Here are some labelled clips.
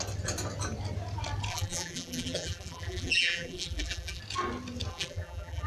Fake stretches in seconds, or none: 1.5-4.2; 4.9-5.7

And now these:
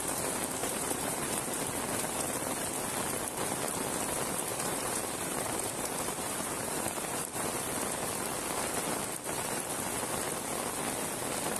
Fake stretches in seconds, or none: 0.6-1.3; 4.5-7.5

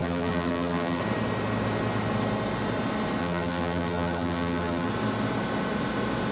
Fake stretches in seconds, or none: 0.0-1.0; 3.2-4.9